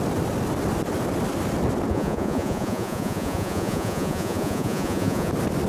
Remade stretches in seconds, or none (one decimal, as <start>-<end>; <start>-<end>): 1.9-5.3